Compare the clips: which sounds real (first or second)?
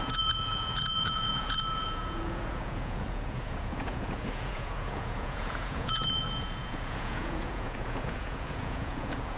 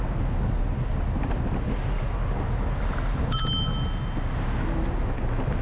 second